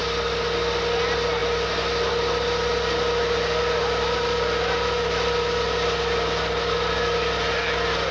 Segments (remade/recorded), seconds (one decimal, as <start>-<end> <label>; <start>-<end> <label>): 0.0-8.1 recorded